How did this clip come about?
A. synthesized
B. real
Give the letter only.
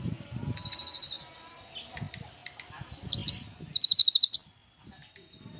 B